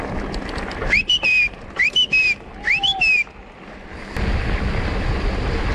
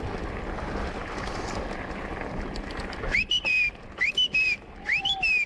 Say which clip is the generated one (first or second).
second